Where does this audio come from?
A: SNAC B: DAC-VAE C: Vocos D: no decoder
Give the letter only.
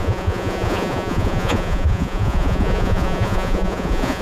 C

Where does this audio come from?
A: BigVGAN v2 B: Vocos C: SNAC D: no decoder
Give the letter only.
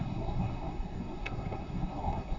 C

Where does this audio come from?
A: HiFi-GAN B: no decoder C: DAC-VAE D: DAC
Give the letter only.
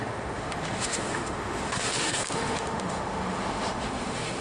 C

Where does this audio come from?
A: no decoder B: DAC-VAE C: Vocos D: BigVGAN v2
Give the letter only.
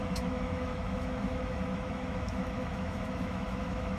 B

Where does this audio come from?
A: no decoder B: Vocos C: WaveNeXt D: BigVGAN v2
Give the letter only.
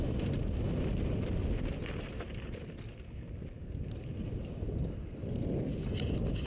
A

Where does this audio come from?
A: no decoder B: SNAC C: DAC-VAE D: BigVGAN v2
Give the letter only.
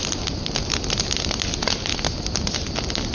A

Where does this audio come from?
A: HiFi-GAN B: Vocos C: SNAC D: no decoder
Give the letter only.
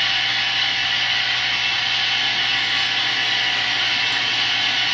D